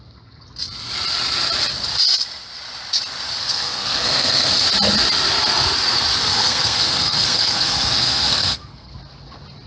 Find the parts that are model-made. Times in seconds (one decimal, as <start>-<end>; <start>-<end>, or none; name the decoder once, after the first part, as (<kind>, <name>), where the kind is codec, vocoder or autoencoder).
3.4-4.5 (codec, SNAC); 6.4-8.9